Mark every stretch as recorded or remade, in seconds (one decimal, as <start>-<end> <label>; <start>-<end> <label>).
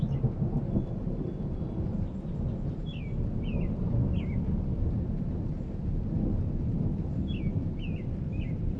0.0-8.8 recorded